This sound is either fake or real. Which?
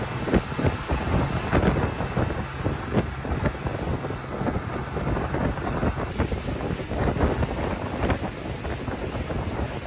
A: real